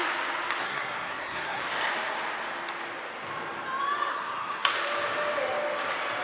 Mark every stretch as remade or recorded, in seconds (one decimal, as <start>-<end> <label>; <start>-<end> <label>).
0.0-0.6 recorded; 0.6-1.6 remade; 1.6-4.1 recorded; 4.1-4.7 remade; 4.7-6.2 recorded